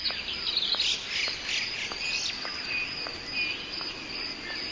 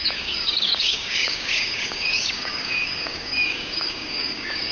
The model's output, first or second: second